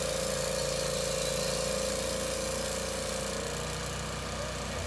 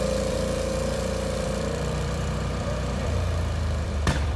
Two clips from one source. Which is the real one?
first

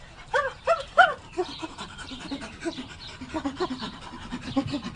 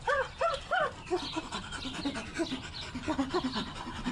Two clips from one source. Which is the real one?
second